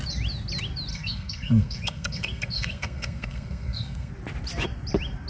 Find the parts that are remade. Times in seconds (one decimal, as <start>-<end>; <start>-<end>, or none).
0.9-4.1